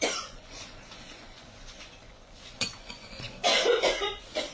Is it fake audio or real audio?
fake